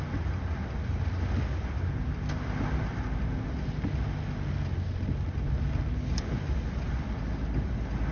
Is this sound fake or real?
real